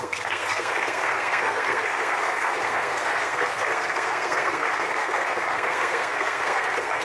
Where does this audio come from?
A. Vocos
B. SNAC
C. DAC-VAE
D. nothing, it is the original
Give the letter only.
B